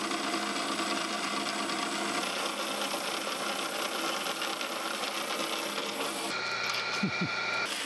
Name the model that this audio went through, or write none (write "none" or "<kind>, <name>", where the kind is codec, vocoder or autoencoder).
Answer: none